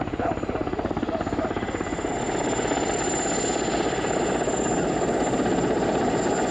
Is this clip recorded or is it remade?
recorded